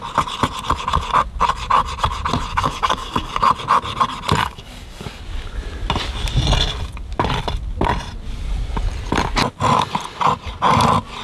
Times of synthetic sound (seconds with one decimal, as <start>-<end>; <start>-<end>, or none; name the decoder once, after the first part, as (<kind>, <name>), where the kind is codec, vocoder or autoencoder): 2.5-3.5 (codec, DAC); 4.4-5.2